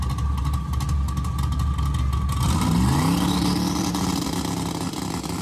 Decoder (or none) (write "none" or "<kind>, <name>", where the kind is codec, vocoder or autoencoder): none